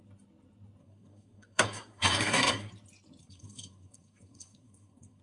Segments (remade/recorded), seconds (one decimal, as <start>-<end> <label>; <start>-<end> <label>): 0.0-0.8 recorded; 0.8-2.7 remade; 2.7-3.2 recorded; 3.2-5.2 remade